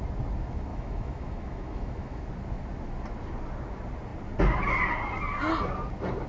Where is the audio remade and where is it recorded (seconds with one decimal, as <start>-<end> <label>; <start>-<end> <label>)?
0.0-0.7 recorded; 0.7-2.2 remade; 2.2-6.3 recorded